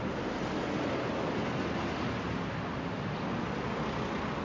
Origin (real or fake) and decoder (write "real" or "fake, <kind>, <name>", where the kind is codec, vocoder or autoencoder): real